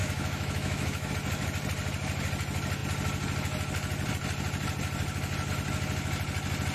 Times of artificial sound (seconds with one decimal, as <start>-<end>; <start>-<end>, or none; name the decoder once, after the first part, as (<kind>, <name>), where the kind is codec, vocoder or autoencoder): 0.0-1.1 (autoencoder, DAC-VAE)